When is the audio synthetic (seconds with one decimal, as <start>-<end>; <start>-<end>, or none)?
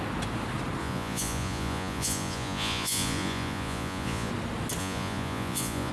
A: 0.8-4.3; 4.8-5.9